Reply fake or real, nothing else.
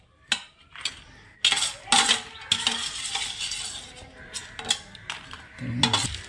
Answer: real